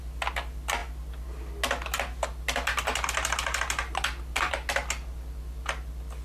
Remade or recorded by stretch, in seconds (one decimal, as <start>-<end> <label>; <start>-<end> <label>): 0.0-6.2 recorded